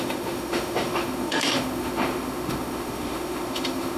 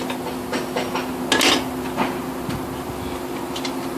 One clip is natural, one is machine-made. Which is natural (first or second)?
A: second